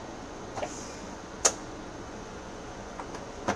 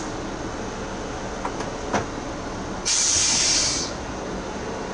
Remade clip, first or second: first